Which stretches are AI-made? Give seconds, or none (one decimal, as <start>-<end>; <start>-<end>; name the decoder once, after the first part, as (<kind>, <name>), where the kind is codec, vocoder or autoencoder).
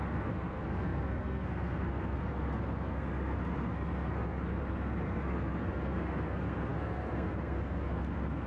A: 0.0-8.5 (codec, SNAC)